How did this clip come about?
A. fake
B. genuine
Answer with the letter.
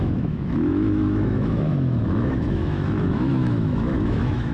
A